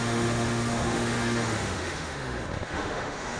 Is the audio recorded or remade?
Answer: remade